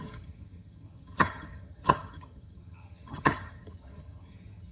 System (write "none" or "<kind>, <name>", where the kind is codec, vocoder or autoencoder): vocoder, HiFi-GAN